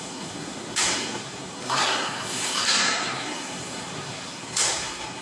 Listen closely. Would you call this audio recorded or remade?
remade